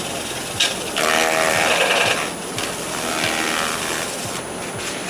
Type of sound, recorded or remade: recorded